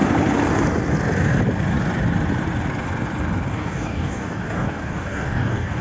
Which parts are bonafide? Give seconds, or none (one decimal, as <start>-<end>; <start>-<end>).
0.0-3.5